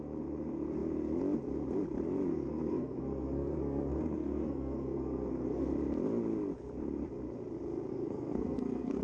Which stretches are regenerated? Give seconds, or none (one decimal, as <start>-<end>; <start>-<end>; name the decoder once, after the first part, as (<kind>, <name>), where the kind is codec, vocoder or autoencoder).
2.3-5.7 (codec, SNAC); 7.9-9.0